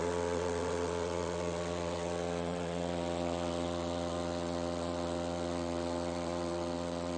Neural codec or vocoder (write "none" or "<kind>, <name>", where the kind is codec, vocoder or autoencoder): vocoder, WaveNeXt